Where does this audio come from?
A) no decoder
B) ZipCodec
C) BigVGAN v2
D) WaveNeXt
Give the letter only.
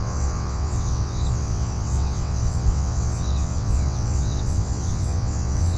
D